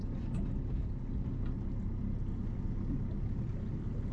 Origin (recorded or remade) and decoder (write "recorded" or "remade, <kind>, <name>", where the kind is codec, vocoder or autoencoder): recorded